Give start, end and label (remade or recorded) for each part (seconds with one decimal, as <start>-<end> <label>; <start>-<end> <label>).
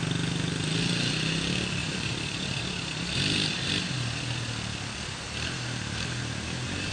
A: 0.0-1.8 recorded; 1.8-3.7 remade; 3.7-4.9 recorded; 4.9-6.9 remade